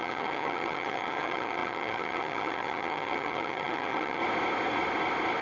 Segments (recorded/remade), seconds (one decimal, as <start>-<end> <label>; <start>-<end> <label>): 0.0-4.2 remade; 4.2-5.4 recorded